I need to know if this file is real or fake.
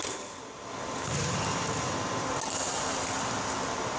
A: real